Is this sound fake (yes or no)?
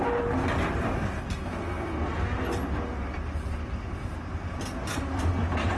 no